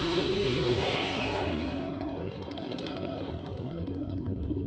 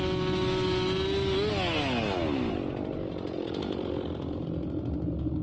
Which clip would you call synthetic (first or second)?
first